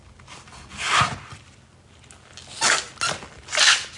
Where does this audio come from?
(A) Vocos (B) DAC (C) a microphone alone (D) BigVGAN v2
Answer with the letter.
C